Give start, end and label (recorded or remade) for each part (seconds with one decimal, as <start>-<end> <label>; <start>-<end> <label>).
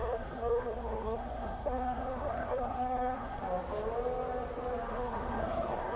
0.0-3.4 remade; 3.4-4.9 recorded; 4.9-6.0 remade